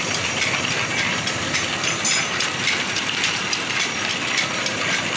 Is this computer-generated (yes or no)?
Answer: yes